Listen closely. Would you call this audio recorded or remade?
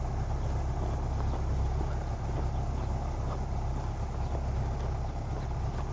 recorded